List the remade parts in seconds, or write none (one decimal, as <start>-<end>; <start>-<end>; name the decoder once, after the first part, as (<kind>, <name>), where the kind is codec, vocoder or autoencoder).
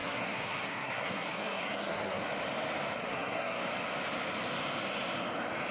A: 0.0-2.2 (codec, SNAC); 3.0-3.6